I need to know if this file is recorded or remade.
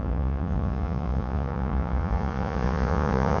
remade